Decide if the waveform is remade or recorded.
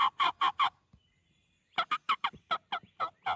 recorded